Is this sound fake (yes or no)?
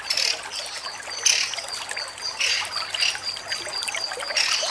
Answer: no